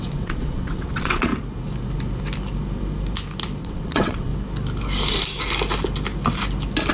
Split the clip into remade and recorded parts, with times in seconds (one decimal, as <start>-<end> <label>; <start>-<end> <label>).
0.0-1.3 remade; 1.3-3.6 recorded; 3.6-4.3 remade; 4.3-6.9 recorded